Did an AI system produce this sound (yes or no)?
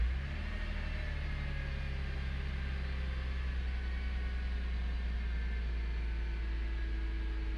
no